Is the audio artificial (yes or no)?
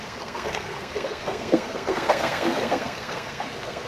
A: yes